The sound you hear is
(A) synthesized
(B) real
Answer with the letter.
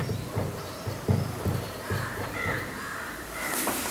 A